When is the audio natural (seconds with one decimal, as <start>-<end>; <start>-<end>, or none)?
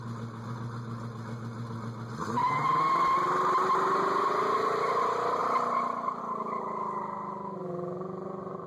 0.0-8.7